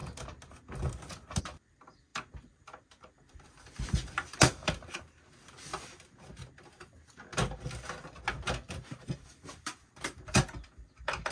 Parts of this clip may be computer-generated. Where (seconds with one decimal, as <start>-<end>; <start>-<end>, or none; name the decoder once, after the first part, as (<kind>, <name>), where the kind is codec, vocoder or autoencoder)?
1.4-5.7 (vocoder, BigVGAN v2); 9.0-11.3